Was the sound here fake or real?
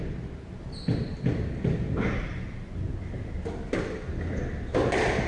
real